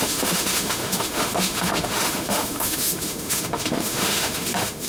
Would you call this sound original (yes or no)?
no